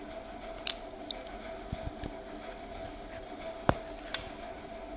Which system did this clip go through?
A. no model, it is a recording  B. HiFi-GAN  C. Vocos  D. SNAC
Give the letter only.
A